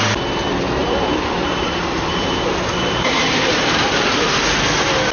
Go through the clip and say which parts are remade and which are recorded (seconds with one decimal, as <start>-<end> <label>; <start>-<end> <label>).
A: 0.0-0.8 recorded; 0.8-3.9 remade; 3.9-5.1 recorded